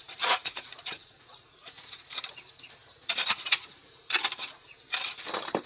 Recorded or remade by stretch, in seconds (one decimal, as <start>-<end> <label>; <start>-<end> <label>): 0.0-2.4 remade; 2.4-2.8 recorded; 2.8-4.1 remade; 4.1-5.7 recorded